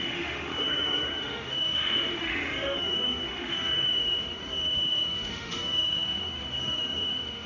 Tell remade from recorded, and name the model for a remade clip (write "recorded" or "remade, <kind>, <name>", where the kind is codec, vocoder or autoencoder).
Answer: remade, autoencoder, DAC-VAE